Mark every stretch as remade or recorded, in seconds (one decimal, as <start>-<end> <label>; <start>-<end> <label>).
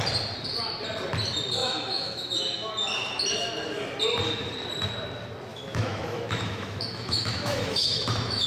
0.0-1.6 recorded; 1.6-2.7 remade; 2.7-5.5 recorded; 5.5-8.5 remade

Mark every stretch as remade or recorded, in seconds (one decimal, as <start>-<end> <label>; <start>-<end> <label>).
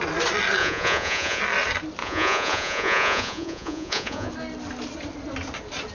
0.0-0.6 recorded; 0.6-1.4 remade; 1.4-2.0 recorded; 2.0-4.3 remade; 4.3-5.9 recorded